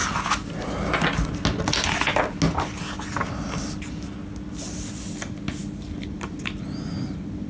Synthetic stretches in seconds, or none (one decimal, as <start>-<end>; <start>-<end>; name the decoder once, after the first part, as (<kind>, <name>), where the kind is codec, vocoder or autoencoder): none